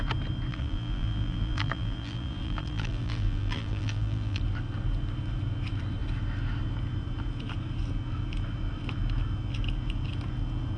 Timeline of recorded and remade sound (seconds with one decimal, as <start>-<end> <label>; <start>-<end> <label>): 0.0-0.5 recorded; 0.5-4.4 remade; 4.4-10.8 recorded